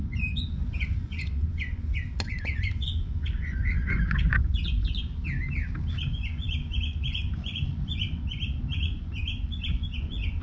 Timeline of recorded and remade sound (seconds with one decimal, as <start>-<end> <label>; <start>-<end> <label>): 0.0-5.1 remade; 5.1-5.9 recorded; 5.9-10.4 remade